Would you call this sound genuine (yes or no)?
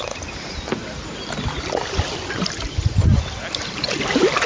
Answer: yes